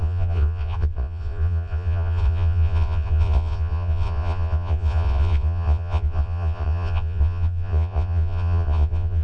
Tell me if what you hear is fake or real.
fake